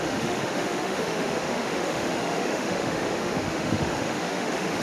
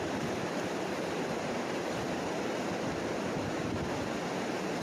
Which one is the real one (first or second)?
second